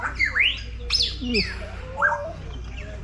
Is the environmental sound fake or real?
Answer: real